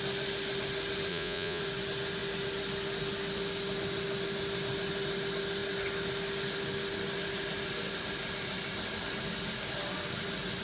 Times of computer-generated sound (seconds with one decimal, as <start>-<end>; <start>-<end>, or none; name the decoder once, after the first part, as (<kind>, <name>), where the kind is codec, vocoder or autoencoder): 1.1-1.6 (vocoder, Vocos)